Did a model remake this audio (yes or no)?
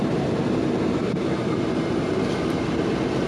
no